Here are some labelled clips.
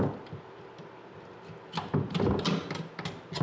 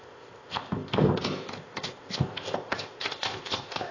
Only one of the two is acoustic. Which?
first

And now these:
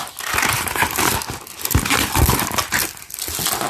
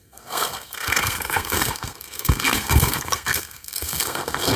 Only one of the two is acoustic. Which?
first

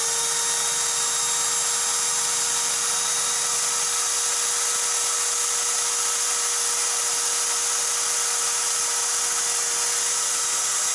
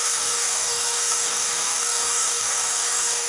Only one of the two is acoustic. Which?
first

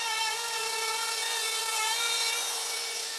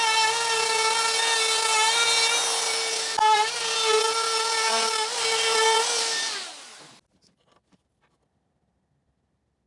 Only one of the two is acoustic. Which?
second